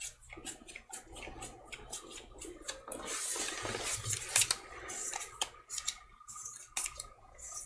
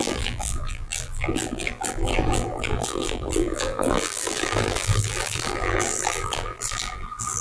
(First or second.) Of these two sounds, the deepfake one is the second